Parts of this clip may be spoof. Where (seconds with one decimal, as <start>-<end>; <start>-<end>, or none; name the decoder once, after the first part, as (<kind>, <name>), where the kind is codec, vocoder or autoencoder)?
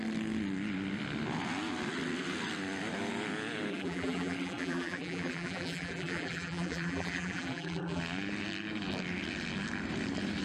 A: 3.7-8.0 (vocoder, BigVGAN v2)